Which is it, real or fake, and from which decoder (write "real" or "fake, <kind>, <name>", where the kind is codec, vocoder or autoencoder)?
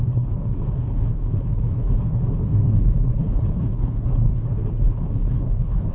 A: fake, codec, HILCodec